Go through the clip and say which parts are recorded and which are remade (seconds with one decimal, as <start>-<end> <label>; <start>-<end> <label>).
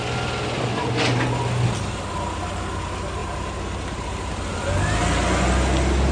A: 0.0-6.1 recorded